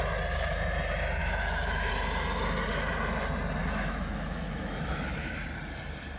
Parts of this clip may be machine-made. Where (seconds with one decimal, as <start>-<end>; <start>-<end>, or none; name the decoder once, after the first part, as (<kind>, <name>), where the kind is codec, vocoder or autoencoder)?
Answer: 1.2-1.9 (autoencoder, DAC-VAE); 3.6-5.3